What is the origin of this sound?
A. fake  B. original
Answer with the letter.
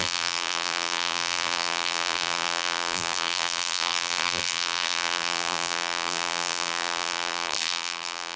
A